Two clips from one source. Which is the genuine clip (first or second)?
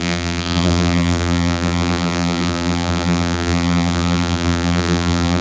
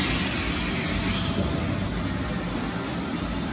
second